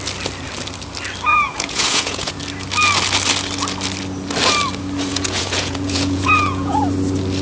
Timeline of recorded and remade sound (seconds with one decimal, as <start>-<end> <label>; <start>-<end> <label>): 0.0-1.3 recorded; 1.3-2.3 remade; 2.3-5.1 recorded; 5.1-6.8 remade; 6.8-7.4 recorded